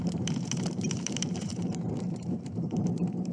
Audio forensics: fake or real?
fake